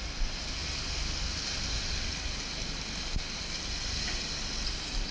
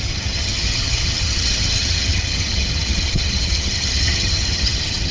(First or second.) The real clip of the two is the first